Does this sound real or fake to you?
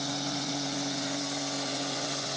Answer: fake